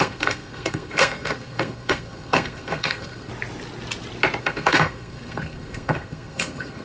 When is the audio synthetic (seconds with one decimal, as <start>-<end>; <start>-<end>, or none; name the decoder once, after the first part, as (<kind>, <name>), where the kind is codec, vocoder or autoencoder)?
0.0-3.3 (codec, SNAC); 4.4-6.8